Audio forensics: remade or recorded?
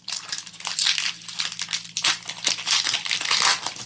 recorded